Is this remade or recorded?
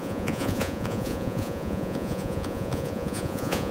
remade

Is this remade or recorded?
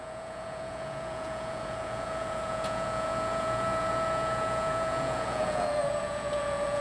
remade